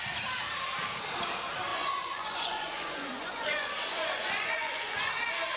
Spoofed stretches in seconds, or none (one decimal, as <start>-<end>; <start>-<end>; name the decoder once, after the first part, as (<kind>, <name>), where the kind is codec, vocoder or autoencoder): 1.7-5.1 (vocoder, Vocos)